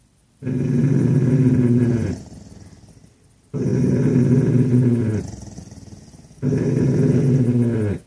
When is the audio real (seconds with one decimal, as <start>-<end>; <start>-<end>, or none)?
0.0-8.1